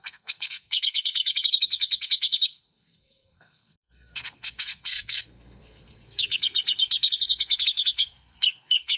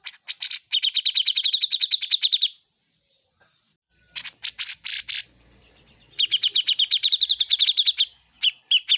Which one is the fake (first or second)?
first